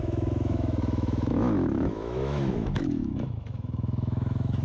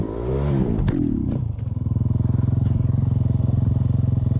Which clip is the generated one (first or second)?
first